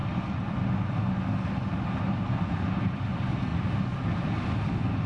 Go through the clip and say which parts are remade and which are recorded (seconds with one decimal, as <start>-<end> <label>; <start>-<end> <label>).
0.0-5.1 recorded

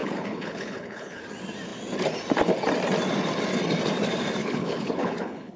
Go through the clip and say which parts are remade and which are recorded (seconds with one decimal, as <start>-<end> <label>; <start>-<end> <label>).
0.0-1.2 remade; 1.2-4.4 recorded; 4.4-5.6 remade

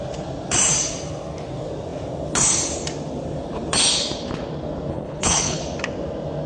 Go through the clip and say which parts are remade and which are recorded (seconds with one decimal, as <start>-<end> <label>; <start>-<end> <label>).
0.0-4.9 recorded; 4.9-5.6 remade; 5.6-6.5 recorded